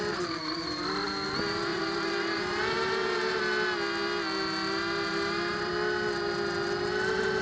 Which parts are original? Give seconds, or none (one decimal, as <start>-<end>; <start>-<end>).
0.0-1.7; 3.4-5.1; 5.7-7.4